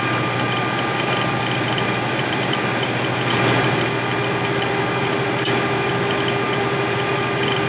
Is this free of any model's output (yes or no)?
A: yes